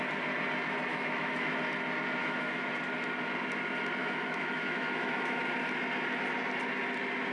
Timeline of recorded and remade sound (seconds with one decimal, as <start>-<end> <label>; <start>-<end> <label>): 0.0-0.9 recorded; 0.9-1.5 remade; 1.5-2.2 recorded; 2.2-2.7 remade; 2.7-4.0 recorded; 4.0-5.4 remade; 5.4-7.3 recorded